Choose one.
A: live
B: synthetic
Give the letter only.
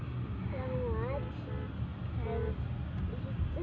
A